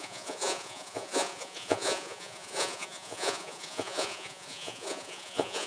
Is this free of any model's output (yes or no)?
no